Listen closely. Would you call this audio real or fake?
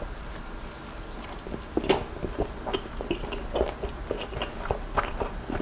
real